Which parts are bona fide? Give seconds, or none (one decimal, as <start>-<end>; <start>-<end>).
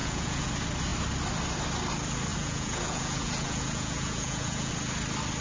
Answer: 0.5-2.3; 4.7-5.4